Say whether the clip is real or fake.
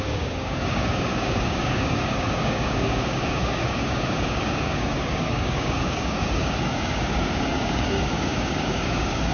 fake